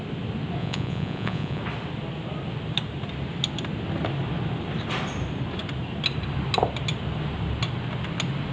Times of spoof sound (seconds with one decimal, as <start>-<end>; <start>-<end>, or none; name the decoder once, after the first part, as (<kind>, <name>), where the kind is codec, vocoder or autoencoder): 0.6-1.6 (vocoder, Vocos)